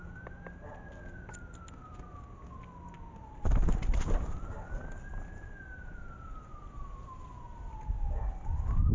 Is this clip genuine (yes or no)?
yes